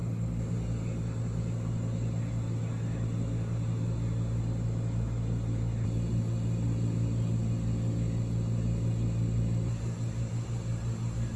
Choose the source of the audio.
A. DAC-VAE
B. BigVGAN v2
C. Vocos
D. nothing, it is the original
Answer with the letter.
D